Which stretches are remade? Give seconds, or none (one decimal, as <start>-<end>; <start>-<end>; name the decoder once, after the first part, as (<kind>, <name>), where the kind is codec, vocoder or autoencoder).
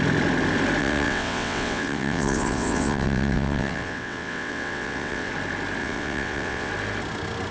0.8-5.3 (vocoder, WaveNeXt); 5.8-6.7